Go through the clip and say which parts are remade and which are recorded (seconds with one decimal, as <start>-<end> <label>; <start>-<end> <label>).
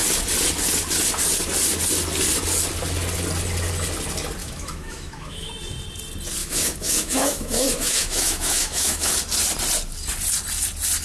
0.0-4.4 recorded; 4.4-5.5 remade; 5.5-6.4 recorded; 6.4-9.1 remade; 9.1-11.0 recorded